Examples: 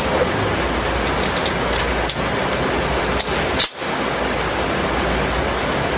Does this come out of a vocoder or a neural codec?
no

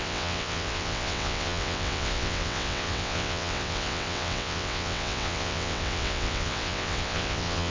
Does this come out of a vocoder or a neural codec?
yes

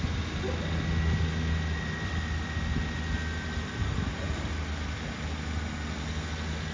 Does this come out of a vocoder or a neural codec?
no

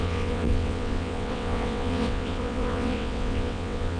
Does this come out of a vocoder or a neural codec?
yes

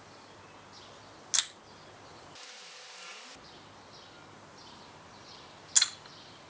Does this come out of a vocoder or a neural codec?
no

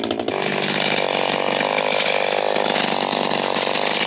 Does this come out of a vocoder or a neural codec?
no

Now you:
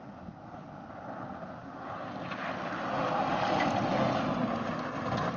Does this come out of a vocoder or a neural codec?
no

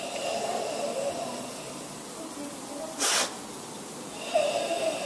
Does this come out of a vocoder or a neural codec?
no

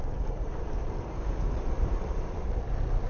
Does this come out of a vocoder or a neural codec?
no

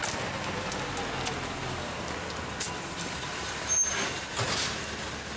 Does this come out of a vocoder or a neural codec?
no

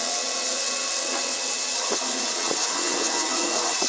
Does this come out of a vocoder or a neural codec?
yes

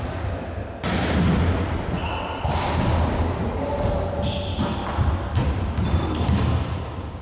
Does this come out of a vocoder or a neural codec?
no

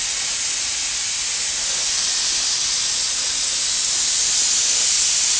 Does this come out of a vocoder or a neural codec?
no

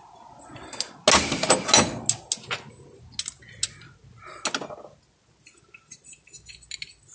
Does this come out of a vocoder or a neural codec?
no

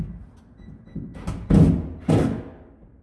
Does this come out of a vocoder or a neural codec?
no